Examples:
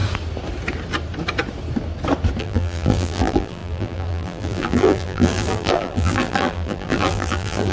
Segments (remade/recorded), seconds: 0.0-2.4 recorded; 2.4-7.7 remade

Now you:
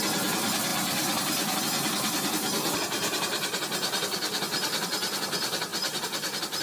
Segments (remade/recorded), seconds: 0.0-0.7 recorded; 0.7-1.6 remade; 1.6-5.7 recorded; 5.7-6.6 remade

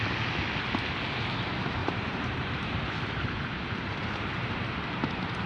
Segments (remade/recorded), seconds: 0.0-1.8 recorded; 1.8-4.6 remade; 4.6-5.5 recorded

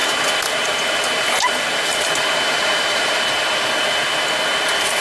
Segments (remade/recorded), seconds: 0.0-3.0 remade; 3.0-5.0 recorded

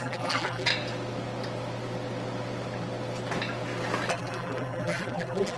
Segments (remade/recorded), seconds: 0.0-0.7 remade; 0.7-4.1 recorded; 4.1-5.6 remade

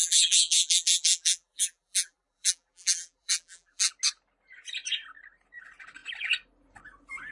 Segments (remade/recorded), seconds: 0.0-3.9 remade; 3.9-7.3 recorded